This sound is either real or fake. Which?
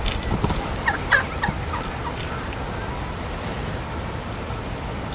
real